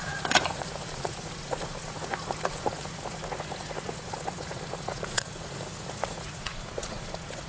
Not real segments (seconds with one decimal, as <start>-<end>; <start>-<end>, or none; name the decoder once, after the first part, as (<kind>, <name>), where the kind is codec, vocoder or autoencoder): 0.0-7.5 (vocoder, Vocos)